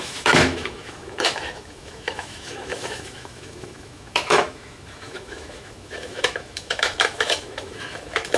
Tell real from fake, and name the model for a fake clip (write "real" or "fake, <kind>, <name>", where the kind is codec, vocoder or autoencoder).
fake, autoencoder, DAC-VAE